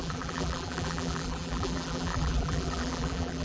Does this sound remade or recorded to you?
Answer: remade